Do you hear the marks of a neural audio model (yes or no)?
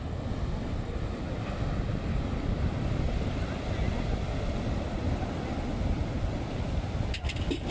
no